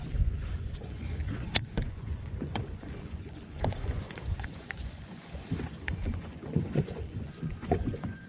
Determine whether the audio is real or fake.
fake